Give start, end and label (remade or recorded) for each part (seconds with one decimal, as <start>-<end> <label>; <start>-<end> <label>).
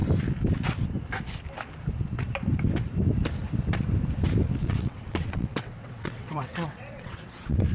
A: 0.0-4.6 recorded; 4.6-7.7 remade